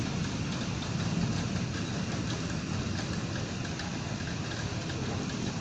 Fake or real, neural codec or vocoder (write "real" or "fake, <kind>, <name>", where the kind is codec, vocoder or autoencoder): real